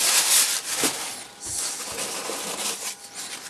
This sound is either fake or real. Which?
fake